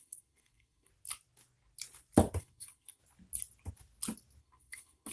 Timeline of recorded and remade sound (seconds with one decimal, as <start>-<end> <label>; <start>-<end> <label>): 0.0-0.9 remade; 0.9-2.4 recorded; 2.4-3.0 remade; 3.0-4.4 recorded; 4.4-5.1 remade